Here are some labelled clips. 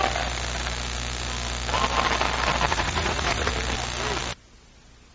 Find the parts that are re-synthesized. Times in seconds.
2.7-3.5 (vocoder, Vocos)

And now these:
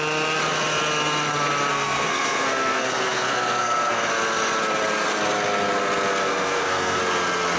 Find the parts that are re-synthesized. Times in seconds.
1.7-4.1 (codec, SNAC); 6.2-7.0

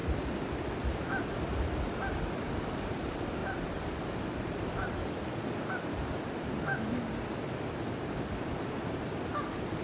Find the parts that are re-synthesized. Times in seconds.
none

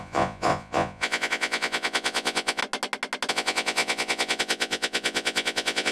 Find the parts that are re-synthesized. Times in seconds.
0.0-2.6 (vocoder, Vocos); 3.3-5.9

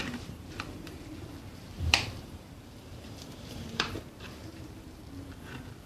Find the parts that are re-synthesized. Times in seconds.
0.0-1.1 (vocoder, BigVGAN v2); 1.5-5.0

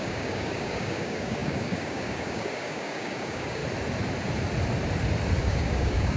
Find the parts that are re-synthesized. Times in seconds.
0.0-3.6 (codec, DAC); 5.4-6.2

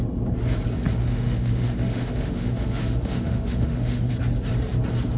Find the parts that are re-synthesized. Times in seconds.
1.0-4.1 (autoencoder, DAC-VAE)

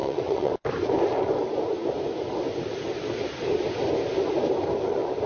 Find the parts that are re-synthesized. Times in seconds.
0.0-0.5 (vocoder, WaveNeXt)